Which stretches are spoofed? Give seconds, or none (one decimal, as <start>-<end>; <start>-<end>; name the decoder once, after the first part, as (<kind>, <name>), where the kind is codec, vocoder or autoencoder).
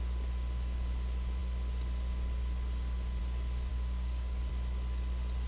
3.7-4.5 (codec, DAC)